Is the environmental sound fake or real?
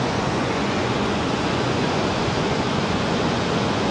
fake